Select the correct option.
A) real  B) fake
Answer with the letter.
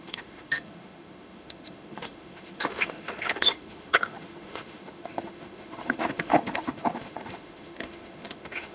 B